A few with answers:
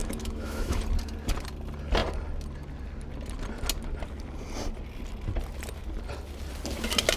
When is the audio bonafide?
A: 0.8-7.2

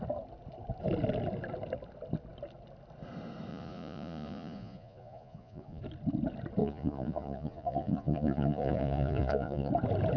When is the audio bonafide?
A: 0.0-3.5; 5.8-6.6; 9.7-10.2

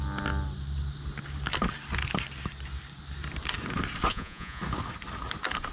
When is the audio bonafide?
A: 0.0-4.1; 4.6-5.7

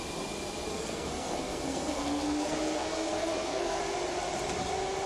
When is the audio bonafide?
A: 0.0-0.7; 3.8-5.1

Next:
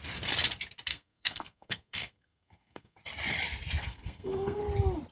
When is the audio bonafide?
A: 0.0-0.9; 3.0-3.8; 4.6-5.1

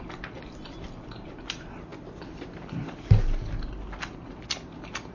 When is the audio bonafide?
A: 0.0-5.1